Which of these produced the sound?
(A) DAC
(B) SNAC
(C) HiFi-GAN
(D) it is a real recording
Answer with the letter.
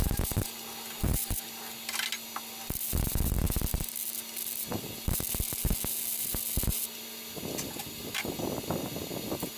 D